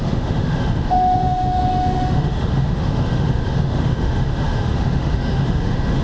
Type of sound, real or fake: fake